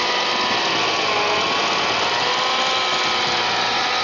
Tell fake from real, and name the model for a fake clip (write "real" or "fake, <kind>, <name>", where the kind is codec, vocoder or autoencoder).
real